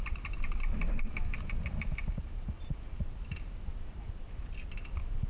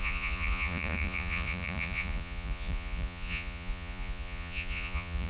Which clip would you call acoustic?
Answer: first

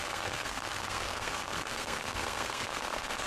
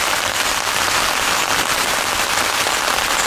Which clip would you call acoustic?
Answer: second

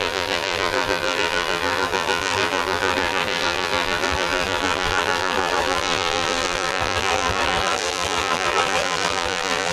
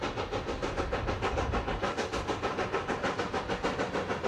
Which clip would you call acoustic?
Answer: second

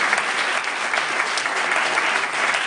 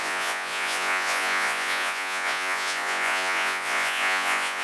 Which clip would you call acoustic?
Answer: first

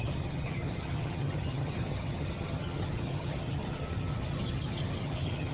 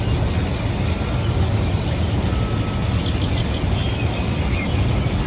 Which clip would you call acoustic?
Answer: second